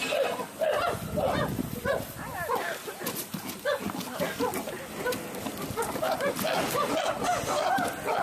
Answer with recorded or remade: recorded